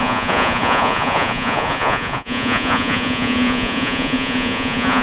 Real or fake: fake